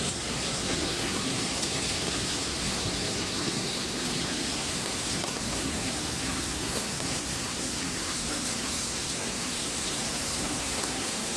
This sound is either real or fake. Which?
fake